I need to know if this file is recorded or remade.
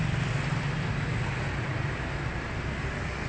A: recorded